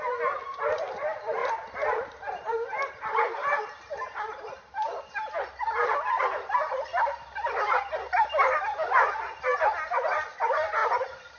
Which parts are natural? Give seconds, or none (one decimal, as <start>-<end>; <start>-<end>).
0.0-1.4; 5.0-6.9; 7.8-10.8

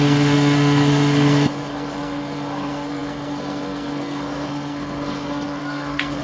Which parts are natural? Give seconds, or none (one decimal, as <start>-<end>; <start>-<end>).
none

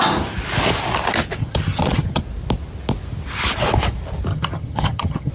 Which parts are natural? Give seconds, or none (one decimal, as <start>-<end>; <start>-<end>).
0.0-1.4; 2.2-4.3

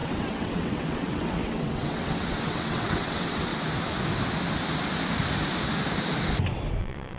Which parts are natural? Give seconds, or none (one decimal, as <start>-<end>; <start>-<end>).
3.5-6.8

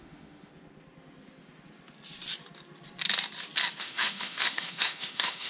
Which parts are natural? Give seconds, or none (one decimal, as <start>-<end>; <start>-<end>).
0.5-3.8

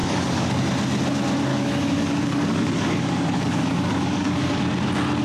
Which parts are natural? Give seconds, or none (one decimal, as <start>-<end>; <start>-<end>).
0.6-1.5; 4.6-5.2